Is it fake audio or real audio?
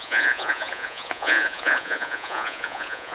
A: fake